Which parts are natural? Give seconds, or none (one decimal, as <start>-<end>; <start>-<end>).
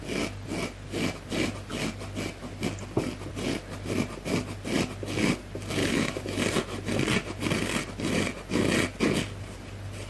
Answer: 0.0-5.8; 6.4-10.1